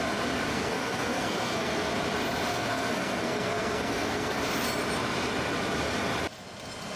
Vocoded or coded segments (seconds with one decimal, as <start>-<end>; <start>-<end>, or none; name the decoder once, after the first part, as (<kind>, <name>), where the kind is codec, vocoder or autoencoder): 0.5-1.9 (codec, SNAC); 2.5-4.4

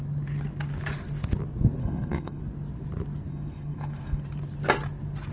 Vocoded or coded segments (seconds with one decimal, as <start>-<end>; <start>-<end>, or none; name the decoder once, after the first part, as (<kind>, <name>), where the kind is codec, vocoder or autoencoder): 1.8-2.4 (codec, SNAC); 3.3-4.2

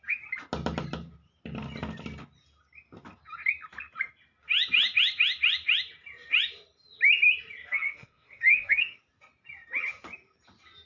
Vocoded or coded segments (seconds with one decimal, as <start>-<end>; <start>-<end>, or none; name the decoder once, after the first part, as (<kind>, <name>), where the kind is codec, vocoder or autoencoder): 7.6-9.0 (codec, SNAC)

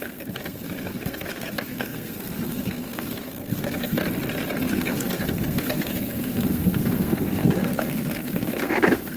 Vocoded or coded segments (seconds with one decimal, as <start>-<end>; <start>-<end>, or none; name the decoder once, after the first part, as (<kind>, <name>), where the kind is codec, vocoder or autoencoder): 0.0-4.0 (codec, SNAC); 4.7-9.2